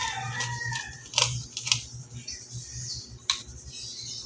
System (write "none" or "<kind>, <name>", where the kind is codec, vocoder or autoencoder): none